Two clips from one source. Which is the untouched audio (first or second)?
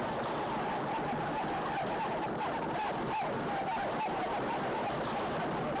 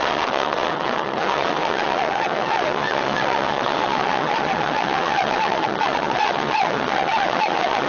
first